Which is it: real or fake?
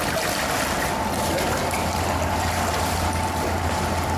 real